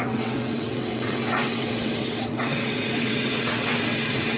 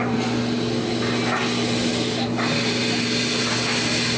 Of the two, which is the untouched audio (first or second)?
second